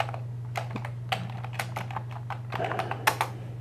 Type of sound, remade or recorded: recorded